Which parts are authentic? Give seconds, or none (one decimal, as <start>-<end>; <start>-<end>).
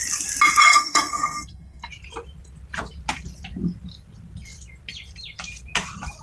0.0-0.7; 1.9-6.2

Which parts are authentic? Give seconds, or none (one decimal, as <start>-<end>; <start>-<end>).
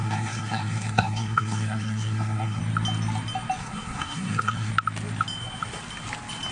2.6-3.6; 4.7-6.5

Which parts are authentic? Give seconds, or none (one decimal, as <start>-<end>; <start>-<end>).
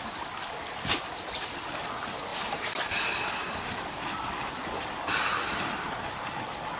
0.0-6.8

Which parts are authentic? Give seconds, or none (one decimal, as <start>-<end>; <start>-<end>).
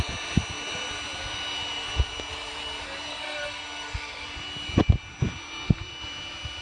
0.0-3.1; 4.2-6.6